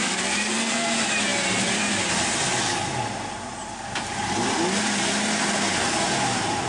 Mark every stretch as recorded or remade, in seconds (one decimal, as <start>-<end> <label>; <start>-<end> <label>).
0.0-0.7 remade; 0.7-6.7 recorded